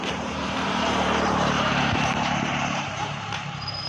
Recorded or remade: remade